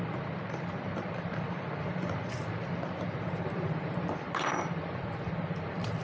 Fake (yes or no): yes